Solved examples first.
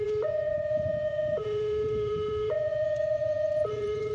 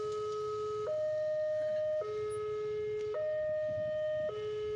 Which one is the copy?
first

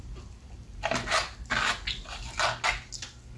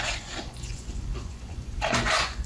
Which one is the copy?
second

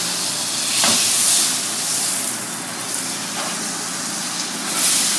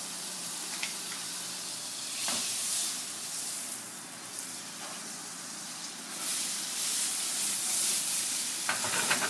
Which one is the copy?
second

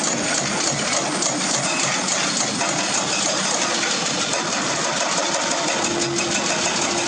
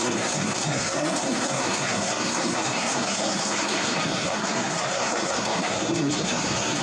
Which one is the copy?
second